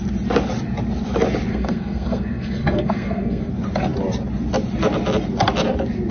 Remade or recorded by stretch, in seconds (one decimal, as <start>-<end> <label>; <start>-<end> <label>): 0.0-1.5 recorded; 1.5-3.5 remade; 3.5-6.1 recorded